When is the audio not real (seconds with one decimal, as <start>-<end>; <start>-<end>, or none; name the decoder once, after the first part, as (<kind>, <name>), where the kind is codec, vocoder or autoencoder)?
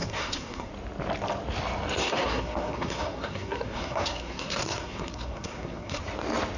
0.0-0.7 (codec, SNAC); 2.0-6.0